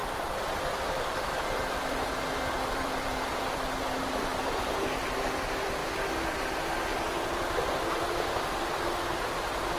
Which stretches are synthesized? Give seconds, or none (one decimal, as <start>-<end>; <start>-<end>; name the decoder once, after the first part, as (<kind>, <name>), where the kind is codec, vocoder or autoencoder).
0.0-3.4 (vocoder, BigVGAN v2); 4.3-5.0